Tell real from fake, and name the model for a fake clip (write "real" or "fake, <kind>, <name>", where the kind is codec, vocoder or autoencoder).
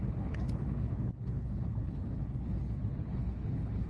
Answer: fake, codec, HILCodec